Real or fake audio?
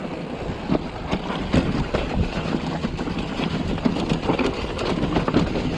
real